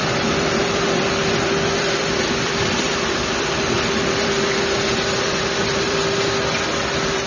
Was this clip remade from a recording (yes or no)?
yes